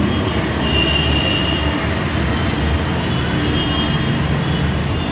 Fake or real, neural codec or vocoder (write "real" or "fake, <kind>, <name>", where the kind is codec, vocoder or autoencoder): real